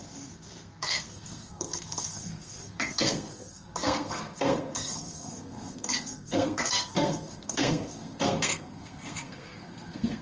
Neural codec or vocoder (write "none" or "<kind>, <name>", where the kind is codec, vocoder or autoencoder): codec, SNAC